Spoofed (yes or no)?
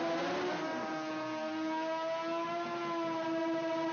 no